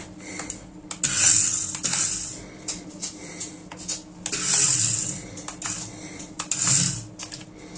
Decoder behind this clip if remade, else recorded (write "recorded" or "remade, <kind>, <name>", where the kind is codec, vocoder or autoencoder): recorded